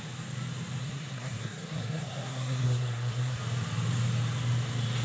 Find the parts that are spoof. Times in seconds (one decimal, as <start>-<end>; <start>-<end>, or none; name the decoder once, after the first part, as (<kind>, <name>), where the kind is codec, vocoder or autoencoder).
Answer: 0.8-3.4 (codec, SNAC)